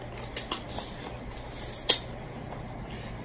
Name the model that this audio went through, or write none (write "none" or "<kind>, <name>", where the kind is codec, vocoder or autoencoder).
none